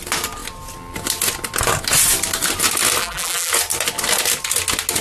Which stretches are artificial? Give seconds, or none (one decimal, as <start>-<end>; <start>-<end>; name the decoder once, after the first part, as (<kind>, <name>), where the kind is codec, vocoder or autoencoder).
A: 3.0-3.5 (vocoder, BigVGAN v2)